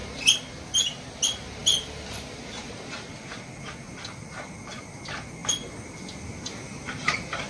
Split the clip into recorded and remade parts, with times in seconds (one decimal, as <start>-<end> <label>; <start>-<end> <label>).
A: 0.0-7.5 recorded